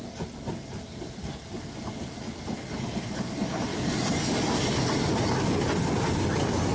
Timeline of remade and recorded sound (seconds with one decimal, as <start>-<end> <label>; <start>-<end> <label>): 0.0-6.7 recorded

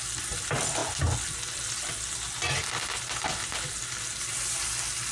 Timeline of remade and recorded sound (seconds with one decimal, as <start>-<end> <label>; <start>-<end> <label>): 0.0-5.1 recorded

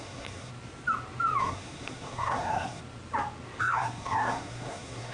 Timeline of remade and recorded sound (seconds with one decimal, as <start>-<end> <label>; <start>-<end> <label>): 0.0-0.5 remade; 0.5-1.4 recorded; 1.4-2.8 remade; 2.8-3.6 recorded; 3.6-5.1 remade

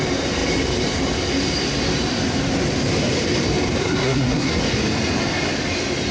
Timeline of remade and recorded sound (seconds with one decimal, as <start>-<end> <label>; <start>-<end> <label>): 0.0-3.8 recorded; 3.8-4.6 remade; 4.6-6.1 recorded

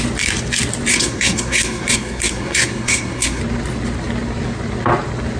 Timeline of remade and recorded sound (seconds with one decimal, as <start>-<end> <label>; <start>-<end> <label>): 0.0-0.9 recorded; 0.9-3.4 remade; 3.4-5.4 recorded

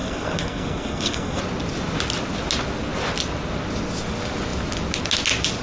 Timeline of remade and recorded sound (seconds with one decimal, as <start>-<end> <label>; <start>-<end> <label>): 0.0-1.4 remade; 1.4-5.6 recorded

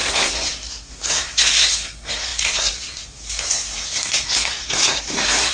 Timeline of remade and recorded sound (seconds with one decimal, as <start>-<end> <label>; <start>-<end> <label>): 0.0-5.5 remade

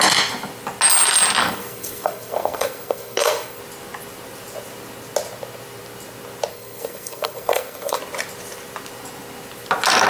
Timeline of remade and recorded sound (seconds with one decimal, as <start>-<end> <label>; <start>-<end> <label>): 0.0-1.4 recorded; 1.4-3.6 remade; 3.6-6.5 recorded; 6.5-8.0 remade; 8.0-10.1 recorded